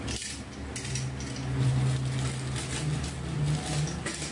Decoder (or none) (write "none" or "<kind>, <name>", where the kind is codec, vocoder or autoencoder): none